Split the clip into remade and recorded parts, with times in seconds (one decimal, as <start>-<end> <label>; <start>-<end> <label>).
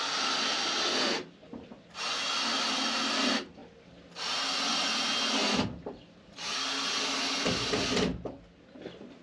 0.0-9.2 recorded